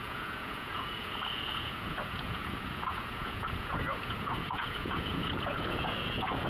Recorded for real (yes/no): no